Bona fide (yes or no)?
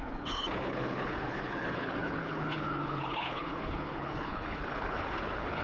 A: no